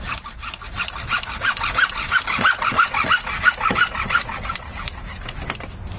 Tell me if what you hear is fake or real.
real